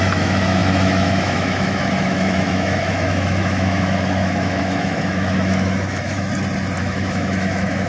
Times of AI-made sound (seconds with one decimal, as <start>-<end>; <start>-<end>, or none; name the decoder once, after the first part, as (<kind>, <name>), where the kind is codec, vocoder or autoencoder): 0.0-6.3 (autoencoder, DAC-VAE); 6.8-7.9